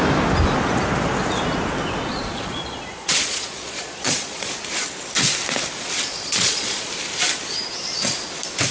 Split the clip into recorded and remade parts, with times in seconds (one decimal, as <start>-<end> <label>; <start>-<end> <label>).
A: 0.0-2.1 recorded; 2.1-4.5 remade; 4.5-6.1 recorded; 6.1-6.9 remade; 6.9-8.7 recorded